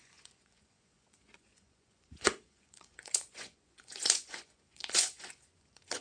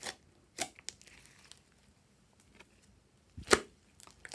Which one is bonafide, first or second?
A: second